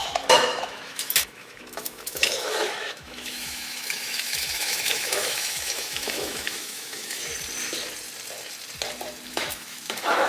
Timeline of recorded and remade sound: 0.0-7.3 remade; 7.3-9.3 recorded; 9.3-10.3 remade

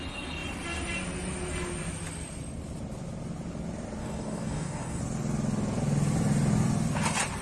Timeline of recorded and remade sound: 0.0-4.0 recorded; 4.0-5.0 remade; 5.0-7.4 recorded

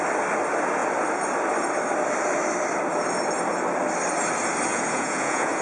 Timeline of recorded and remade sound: 0.0-4.7 recorded; 4.7-5.6 remade

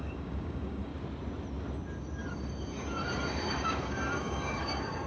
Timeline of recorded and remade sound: 0.0-0.9 remade; 0.9-3.5 recorded; 3.5-5.1 remade